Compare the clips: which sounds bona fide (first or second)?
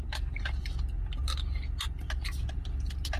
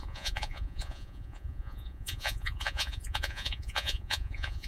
first